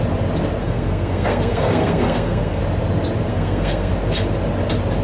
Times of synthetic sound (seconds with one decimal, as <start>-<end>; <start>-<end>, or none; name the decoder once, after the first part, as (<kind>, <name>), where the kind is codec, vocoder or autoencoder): 0.6-2.6 (codec, SNAC); 3.3-3.9